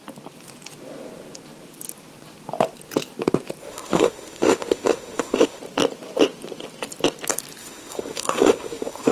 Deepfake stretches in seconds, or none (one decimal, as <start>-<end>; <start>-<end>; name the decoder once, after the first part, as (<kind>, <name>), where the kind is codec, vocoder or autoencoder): 3.6-5.6 (autoencoder, DAC-VAE); 7.6-9.1